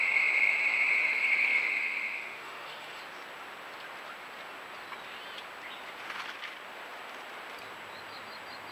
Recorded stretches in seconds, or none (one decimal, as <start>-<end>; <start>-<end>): 0.0-1.0; 3.0-8.7